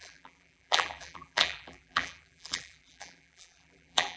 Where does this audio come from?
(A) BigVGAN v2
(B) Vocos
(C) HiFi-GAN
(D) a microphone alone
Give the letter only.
A